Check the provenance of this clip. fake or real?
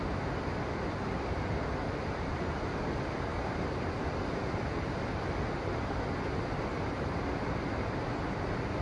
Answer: real